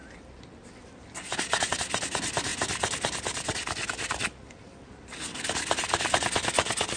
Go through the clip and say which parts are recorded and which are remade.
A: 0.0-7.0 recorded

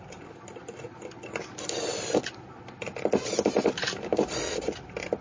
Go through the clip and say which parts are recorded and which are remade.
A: 0.0-1.9 recorded; 1.9-3.1 remade; 3.1-5.2 recorded